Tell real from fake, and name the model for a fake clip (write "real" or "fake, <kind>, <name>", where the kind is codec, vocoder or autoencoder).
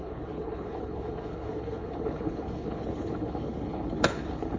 fake, codec, HILCodec